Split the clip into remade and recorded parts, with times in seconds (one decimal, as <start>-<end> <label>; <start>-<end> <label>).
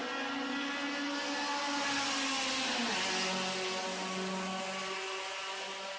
0.0-6.0 recorded